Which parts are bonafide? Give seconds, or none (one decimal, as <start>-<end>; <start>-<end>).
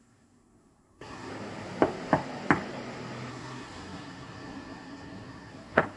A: 1.3-3.3